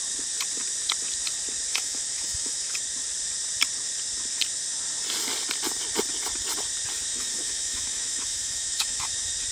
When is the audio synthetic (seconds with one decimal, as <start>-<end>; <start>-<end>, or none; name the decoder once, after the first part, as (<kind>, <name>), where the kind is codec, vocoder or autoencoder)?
1.7-2.8 (autoencoder, DAC-VAE); 7.1-9.1

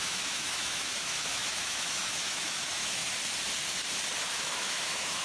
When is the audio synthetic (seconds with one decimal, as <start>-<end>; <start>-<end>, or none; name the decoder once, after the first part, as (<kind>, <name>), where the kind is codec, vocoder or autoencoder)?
0.0-3.0 (autoencoder, DAC-VAE); 4.3-5.2